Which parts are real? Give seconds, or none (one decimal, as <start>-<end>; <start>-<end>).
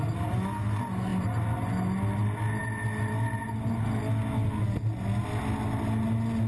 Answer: 0.0-6.5